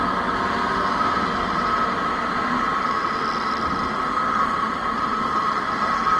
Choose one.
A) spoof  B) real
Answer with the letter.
B